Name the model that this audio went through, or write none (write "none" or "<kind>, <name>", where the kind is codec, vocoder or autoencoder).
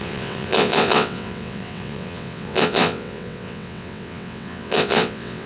vocoder, WaveNeXt